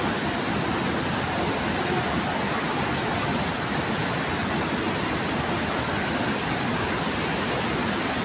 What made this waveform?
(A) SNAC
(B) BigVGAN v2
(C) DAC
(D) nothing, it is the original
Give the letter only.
D